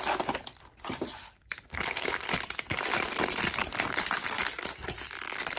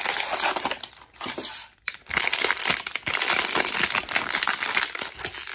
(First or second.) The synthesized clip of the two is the first